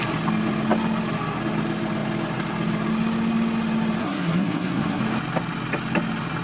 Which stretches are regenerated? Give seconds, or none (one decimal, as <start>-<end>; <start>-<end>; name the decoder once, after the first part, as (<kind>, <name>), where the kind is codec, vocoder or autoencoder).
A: 4.0-5.0 (codec, SNAC)